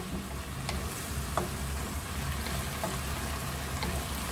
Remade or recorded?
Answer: recorded